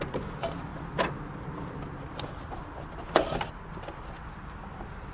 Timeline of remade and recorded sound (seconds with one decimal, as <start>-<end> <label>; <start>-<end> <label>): 0.0-5.1 recorded